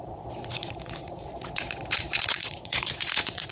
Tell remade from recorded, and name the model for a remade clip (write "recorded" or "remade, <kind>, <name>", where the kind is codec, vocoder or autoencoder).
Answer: remade, vocoder, Vocos